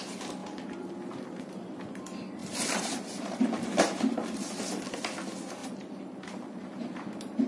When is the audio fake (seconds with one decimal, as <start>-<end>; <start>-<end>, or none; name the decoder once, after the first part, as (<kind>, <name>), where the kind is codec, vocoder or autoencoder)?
0.4-1.8 (vocoder, BigVGAN v2); 2.4-4.6; 5.6-7.5